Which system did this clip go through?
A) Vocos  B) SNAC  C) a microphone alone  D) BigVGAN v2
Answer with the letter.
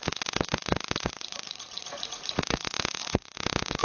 A